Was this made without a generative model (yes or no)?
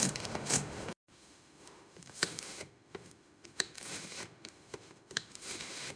no